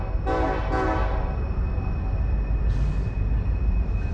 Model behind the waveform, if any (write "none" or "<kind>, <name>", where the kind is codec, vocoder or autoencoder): none